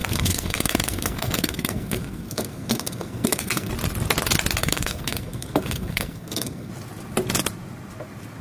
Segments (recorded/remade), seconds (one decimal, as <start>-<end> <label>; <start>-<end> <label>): 0.0-3.7 remade; 3.7-4.6 recorded; 4.6-6.7 remade; 6.7-8.4 recorded